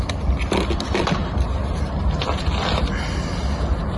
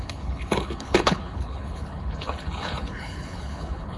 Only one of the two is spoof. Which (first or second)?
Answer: second